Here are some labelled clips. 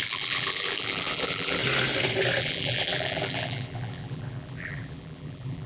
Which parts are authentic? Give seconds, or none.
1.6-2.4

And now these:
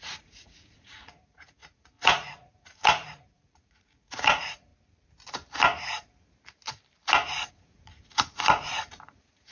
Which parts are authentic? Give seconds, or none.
4.7-7.5

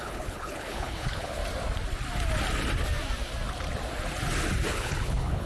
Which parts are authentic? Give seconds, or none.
1.4-4.7

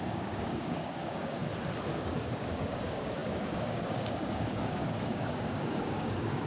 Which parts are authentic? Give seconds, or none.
1.4-1.9

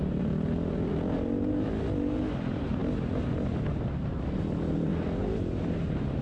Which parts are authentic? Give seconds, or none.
0.9-2.3; 2.8-4.4; 4.9-5.6

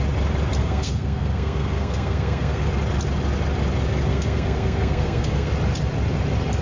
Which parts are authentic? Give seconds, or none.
0.0-0.6; 2.7-4.1; 5.5-6.6

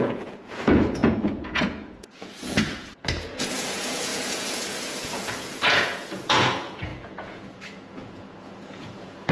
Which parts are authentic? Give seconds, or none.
none

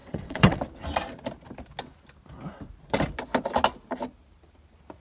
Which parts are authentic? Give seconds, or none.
0.6-5.0